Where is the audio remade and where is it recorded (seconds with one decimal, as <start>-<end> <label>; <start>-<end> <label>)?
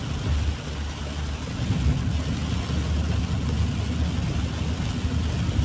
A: 0.0-5.6 recorded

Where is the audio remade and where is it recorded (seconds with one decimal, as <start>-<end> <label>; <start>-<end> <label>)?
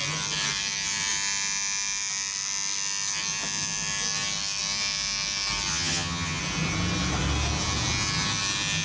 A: 0.0-5.7 recorded; 5.7-6.4 remade; 6.4-8.8 recorded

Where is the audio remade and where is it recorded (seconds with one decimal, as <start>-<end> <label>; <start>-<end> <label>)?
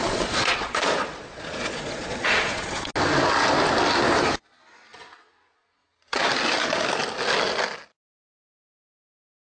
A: 0.0-2.9 remade; 2.9-4.9 recorded; 4.9-6.2 remade; 6.2-9.6 recorded